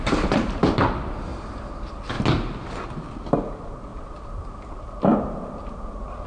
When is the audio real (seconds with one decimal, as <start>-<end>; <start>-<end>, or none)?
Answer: 1.3-3.0